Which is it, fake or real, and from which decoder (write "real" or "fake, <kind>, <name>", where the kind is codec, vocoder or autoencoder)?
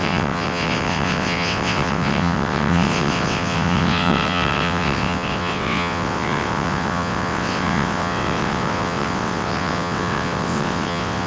fake, vocoder, WaveNeXt